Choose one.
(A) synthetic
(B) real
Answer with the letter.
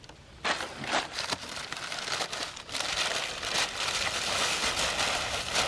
A